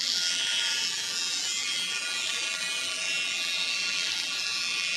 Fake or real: fake